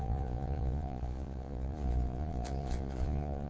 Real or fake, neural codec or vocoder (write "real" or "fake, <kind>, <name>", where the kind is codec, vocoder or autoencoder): fake, vocoder, Vocos